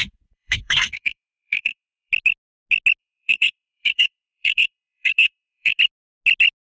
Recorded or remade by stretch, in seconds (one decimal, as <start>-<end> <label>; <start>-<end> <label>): 0.0-2.1 remade; 2.1-3.0 recorded; 3.0-5.8 remade; 5.8-6.8 recorded